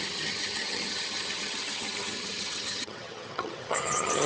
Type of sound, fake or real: fake